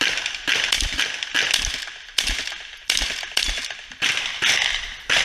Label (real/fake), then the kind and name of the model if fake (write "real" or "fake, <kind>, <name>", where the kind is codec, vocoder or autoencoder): real